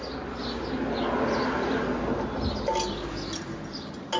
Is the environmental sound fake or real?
real